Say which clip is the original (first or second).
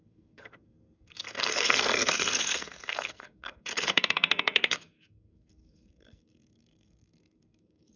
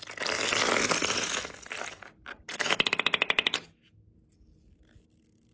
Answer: second